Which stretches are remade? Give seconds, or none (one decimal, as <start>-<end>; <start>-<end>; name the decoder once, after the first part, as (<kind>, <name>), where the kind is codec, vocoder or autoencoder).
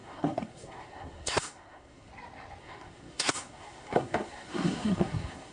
0.0-2.1 (codec, SNAC); 2.6-5.5